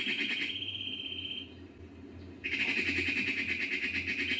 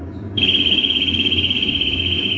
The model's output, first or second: second